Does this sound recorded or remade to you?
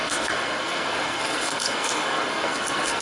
remade